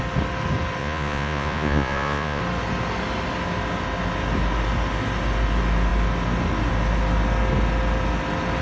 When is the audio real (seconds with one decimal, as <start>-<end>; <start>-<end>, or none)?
0.0-0.8; 2.4-8.6